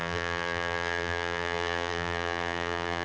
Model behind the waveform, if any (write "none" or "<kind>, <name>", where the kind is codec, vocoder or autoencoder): vocoder, BigVGAN v2